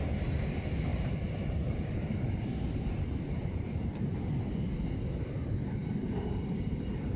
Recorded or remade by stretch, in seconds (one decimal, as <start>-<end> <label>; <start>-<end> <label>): 0.0-0.9 recorded; 0.9-5.0 remade; 5.0-5.8 recorded; 5.8-7.2 remade